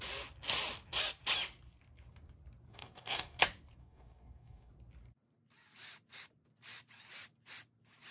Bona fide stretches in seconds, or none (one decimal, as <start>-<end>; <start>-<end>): 0.0-2.7; 3.4-3.8; 4.7-8.1